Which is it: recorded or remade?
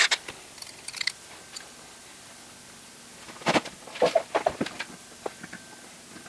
recorded